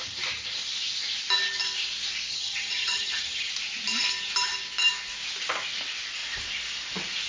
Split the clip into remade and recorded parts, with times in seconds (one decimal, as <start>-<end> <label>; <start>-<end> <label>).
0.0-2.3 recorded; 2.3-3.5 remade; 3.5-7.3 recorded